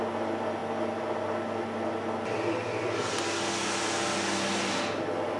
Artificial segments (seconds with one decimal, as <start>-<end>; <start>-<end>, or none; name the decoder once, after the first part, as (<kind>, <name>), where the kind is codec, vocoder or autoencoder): none